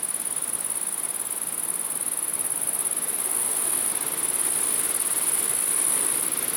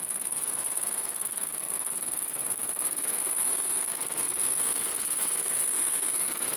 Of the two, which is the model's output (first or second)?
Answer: second